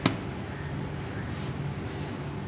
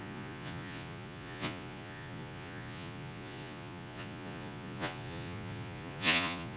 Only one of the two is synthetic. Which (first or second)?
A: second